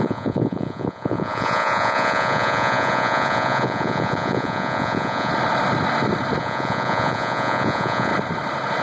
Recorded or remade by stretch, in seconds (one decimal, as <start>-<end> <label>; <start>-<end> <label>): 0.0-5.3 remade; 5.3-6.4 recorded; 6.4-8.1 remade; 8.1-8.8 recorded